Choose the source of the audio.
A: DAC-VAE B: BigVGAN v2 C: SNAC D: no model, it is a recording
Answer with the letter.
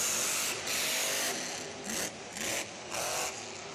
D